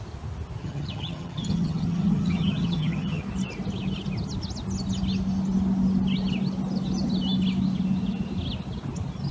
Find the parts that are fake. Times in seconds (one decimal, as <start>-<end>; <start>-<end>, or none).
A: 0.6-3.2